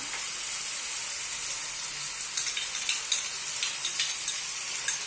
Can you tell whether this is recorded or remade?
recorded